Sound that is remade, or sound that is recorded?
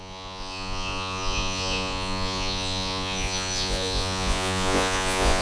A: remade